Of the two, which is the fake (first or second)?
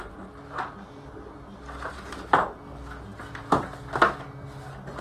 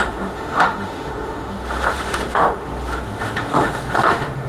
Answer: second